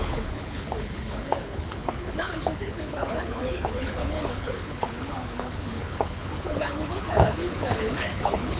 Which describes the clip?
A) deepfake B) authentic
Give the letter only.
A